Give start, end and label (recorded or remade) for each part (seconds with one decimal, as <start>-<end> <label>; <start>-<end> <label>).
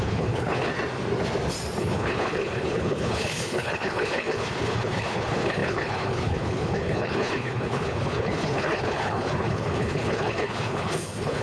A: 0.0-0.7 remade; 0.7-1.8 recorded; 1.8-11.4 remade